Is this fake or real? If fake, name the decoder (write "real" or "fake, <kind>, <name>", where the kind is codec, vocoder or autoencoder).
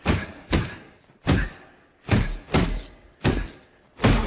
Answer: real